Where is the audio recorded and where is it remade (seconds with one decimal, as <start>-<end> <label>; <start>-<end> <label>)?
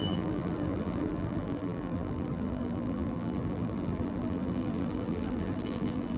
0.0-6.2 remade